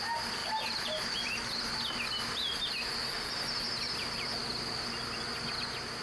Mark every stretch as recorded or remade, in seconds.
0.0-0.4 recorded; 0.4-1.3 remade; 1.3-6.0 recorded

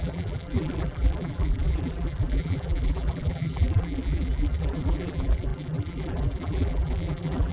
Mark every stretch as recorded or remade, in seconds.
0.0-7.5 remade

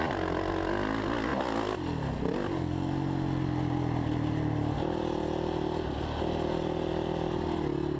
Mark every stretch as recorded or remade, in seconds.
0.0-8.0 recorded

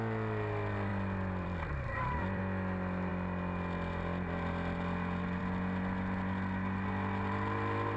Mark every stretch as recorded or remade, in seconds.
0.0-0.9 recorded; 0.9-2.4 remade; 2.4-8.0 recorded

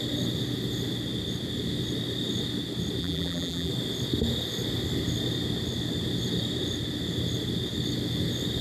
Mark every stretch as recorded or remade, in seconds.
0.0-3.0 recorded; 3.0-3.7 remade; 3.7-8.6 recorded